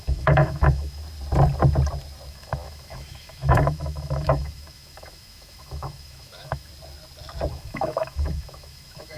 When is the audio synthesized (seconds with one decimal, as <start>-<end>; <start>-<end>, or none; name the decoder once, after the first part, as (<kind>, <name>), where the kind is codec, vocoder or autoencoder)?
0.0-1.0 (autoencoder, DAC-VAE); 2.3-6.7; 7.5-9.2